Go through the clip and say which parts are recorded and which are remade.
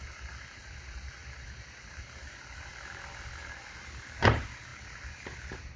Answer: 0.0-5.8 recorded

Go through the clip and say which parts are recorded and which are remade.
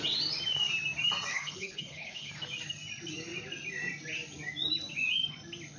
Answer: 0.0-1.3 recorded; 1.3-2.3 remade; 2.3-5.8 recorded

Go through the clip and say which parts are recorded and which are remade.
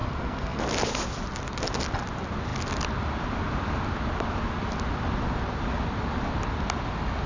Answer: 0.0-0.6 remade; 0.6-7.3 recorded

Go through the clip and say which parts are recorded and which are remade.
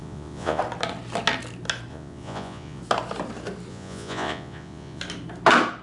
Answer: 0.0-0.6 remade; 0.6-1.9 recorded; 1.9-2.8 remade; 2.8-3.7 recorded; 3.7-5.0 remade; 5.0-5.8 recorded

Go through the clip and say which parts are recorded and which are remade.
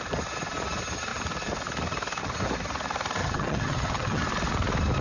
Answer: 0.0-3.2 recorded; 3.2-4.2 remade; 4.2-5.0 recorded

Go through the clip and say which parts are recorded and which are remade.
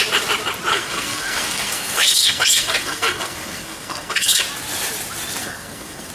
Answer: 0.0-0.7 recorded; 0.7-4.4 remade; 4.4-5.4 recorded; 5.4-6.1 remade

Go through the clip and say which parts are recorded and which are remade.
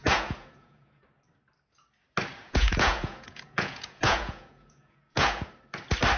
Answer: 0.0-1.0 remade; 1.0-2.4 recorded; 2.4-5.5 remade; 5.5-6.2 recorded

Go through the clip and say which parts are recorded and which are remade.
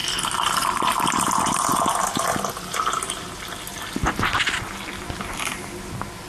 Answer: 0.0-6.3 recorded